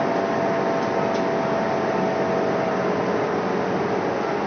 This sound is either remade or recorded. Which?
recorded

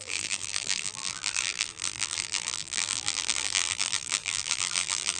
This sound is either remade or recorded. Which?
remade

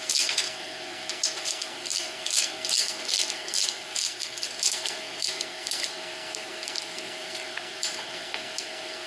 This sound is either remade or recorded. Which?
remade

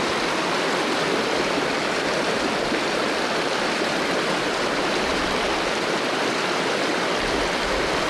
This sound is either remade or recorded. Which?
recorded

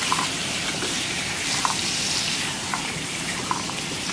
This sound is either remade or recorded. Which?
remade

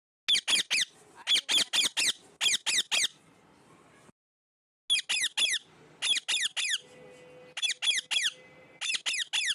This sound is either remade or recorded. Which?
recorded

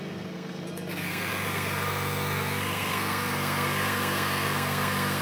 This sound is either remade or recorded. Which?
remade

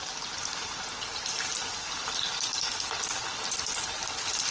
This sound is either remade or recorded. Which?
recorded